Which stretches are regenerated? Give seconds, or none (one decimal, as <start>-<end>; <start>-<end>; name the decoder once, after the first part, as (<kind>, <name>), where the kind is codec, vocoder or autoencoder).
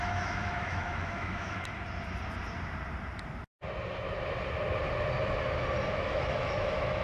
0.0-1.7 (autoencoder, DAC-VAE); 5.9-7.0